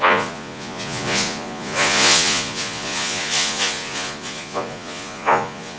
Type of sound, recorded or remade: remade